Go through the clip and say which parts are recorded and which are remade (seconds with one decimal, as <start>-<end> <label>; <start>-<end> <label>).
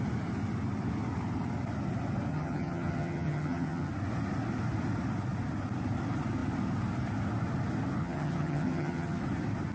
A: 0.0-2.3 recorded; 2.3-3.9 remade; 3.9-8.0 recorded; 8.0-9.2 remade; 9.2-9.7 recorded